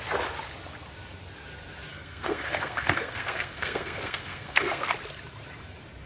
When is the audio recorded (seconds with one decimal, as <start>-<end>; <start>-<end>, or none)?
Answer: 0.0-1.9; 4.9-6.1